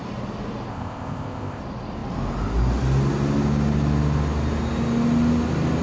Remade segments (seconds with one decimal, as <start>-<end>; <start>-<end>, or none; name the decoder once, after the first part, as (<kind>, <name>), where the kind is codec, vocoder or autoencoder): 0.7-1.6 (codec, ZipCodec)